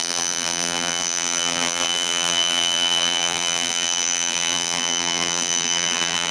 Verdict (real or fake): fake